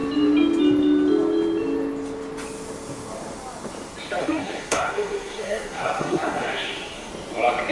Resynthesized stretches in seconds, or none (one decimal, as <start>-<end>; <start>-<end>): 4.2-7.1